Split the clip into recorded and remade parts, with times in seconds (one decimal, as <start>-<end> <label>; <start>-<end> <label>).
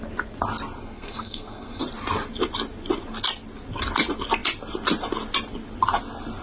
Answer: 0.0-0.8 recorded; 0.8-1.8 remade; 1.8-6.4 recorded